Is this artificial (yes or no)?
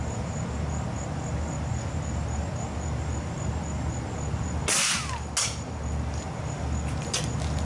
no